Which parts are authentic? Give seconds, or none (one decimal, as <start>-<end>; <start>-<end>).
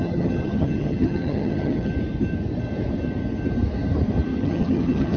1.9-4.4